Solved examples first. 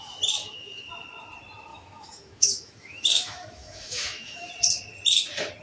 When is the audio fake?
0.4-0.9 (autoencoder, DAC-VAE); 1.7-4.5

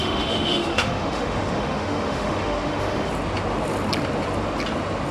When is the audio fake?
0.0-3.1 (autoencoder, DAC-VAE)